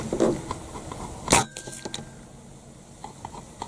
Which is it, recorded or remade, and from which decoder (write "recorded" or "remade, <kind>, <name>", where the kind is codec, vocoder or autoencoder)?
recorded